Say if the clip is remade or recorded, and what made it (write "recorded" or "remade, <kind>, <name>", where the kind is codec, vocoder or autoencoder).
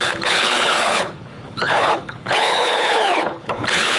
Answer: remade, codec, HILCodec